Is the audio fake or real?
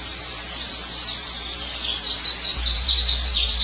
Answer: fake